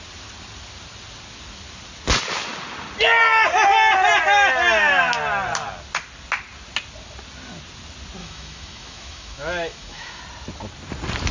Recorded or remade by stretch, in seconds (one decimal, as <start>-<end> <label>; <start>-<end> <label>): 0.0-8.2 recorded; 8.2-10.2 remade; 10.2-11.3 recorded